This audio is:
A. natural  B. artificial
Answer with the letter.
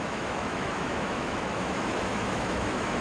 B